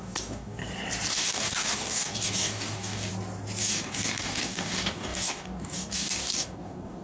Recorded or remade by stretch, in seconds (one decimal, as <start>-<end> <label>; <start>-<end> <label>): 0.0-0.6 remade; 0.6-1.1 recorded; 1.1-3.1 remade; 3.1-3.6 recorded; 3.6-7.0 remade

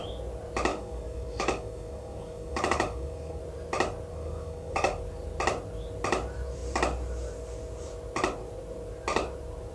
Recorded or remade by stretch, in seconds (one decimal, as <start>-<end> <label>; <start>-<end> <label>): 0.0-0.7 recorded; 0.7-3.4 remade; 3.4-4.1 recorded; 4.1-5.0 remade; 5.0-9.7 recorded

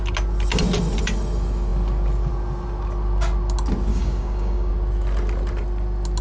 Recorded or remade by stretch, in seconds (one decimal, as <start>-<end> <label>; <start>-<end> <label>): 0.0-3.9 recorded; 3.9-4.7 remade; 4.7-6.2 recorded

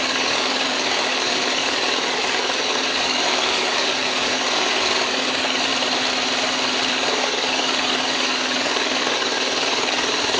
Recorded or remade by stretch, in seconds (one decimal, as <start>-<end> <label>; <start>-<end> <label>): 0.0-5.7 remade; 5.7-6.9 recorded; 6.9-10.4 remade

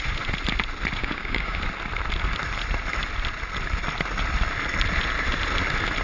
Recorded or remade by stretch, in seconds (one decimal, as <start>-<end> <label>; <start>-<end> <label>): 0.0-1.0 recorded; 1.0-1.6 remade; 1.6-6.0 recorded

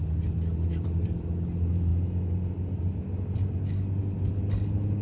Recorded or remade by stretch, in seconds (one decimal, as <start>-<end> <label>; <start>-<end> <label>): 0.0-5.0 recorded

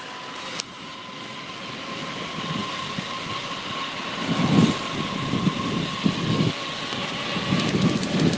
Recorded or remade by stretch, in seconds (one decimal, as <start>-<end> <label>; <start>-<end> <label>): 0.0-8.4 recorded